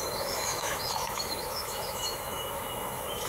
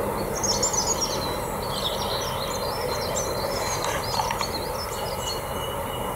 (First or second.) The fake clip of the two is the first